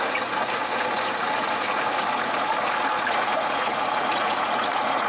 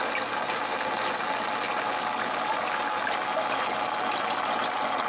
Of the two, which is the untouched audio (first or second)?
second